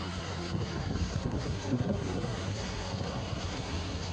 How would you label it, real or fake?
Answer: fake